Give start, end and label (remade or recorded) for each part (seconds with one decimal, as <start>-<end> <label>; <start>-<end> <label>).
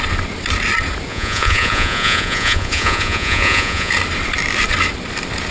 0.0-1.1 recorded; 1.1-3.9 remade; 3.9-5.5 recorded